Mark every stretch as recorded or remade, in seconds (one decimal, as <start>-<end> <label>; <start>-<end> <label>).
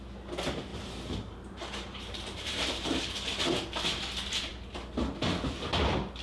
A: 0.0-0.7 recorded; 0.7-3.0 remade; 3.0-6.2 recorded